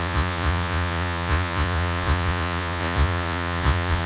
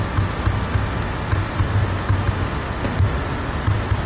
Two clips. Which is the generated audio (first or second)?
first